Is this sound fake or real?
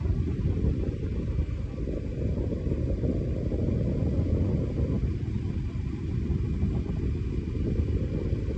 real